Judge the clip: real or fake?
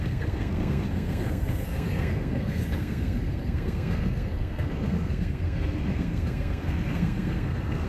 fake